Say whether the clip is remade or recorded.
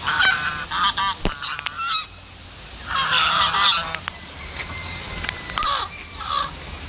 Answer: recorded